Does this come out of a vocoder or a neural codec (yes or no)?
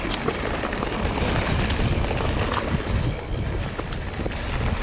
no